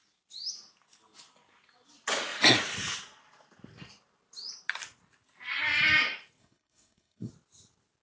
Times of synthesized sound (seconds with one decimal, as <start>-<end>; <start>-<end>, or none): 6.4-7.3